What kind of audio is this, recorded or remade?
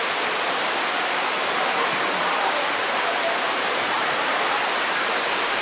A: remade